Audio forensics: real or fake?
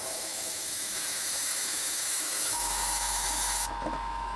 fake